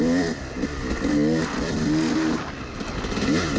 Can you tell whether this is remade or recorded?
recorded